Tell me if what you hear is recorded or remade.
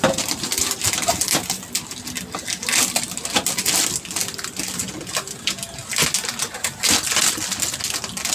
recorded